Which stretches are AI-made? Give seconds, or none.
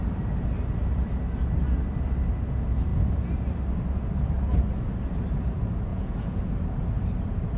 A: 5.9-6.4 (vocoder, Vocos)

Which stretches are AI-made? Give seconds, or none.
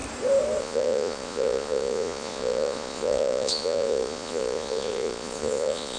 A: 0.6-6.0 (vocoder, Vocos)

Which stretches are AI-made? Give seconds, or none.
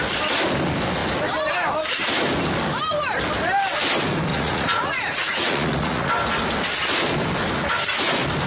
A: 4.3-6.1 (vocoder, Vocos)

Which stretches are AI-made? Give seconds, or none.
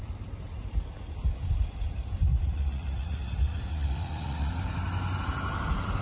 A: 2.3-4.5 (vocoder, Vocos)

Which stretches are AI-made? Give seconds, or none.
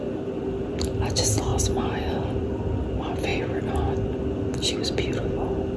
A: none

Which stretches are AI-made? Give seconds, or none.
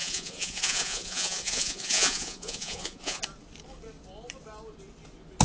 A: 0.0-3.2 (vocoder, Vocos)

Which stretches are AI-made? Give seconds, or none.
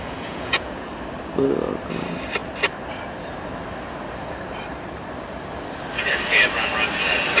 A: 0.0-0.9 (vocoder, Vocos)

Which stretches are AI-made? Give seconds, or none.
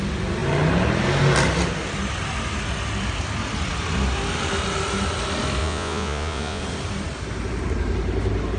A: 5.6-6.6 (vocoder, Vocos)